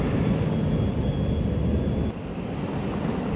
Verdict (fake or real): real